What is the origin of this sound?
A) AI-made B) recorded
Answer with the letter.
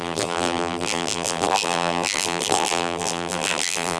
A